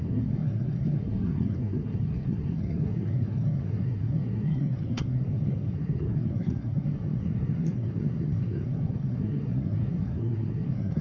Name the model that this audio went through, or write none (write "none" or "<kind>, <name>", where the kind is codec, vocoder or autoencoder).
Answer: codec, SNAC